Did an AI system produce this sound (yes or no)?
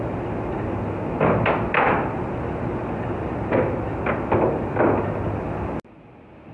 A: no